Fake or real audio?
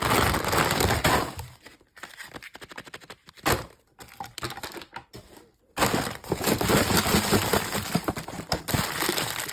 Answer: real